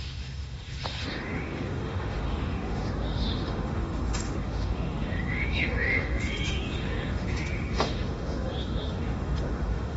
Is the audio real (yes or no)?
no